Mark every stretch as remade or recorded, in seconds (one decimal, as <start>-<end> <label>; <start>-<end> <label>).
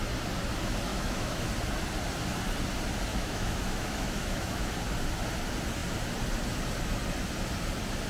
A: 0.0-0.9 recorded; 0.9-1.5 remade; 1.5-3.1 recorded; 3.1-4.7 remade; 4.7-8.1 recorded